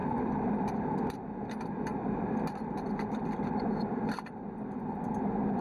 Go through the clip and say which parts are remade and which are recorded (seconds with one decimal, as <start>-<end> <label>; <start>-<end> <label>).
0.0-1.0 remade; 1.0-1.9 recorded; 1.9-4.3 remade; 4.3-5.6 recorded